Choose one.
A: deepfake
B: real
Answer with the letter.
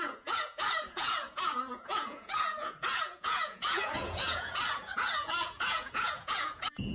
A